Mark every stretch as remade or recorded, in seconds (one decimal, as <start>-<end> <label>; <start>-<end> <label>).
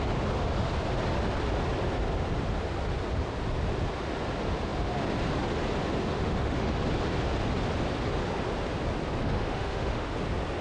0.0-6.1 recorded; 6.1-6.7 remade; 6.7-9.2 recorded; 9.2-10.1 remade; 10.1-10.6 recorded